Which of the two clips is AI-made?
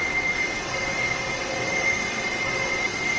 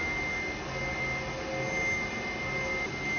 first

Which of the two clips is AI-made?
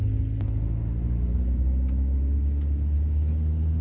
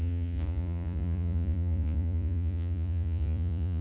second